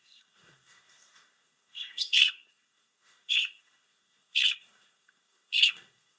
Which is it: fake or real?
fake